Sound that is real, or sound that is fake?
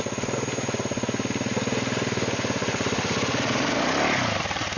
real